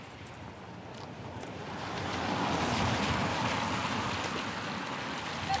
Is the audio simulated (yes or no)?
no